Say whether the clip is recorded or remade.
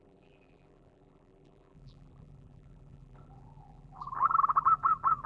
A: remade